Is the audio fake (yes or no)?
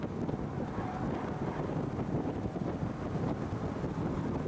no